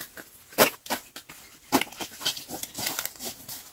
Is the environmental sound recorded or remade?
recorded